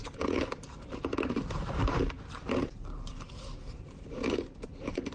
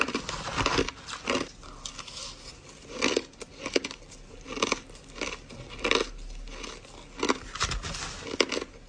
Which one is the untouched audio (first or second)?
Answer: second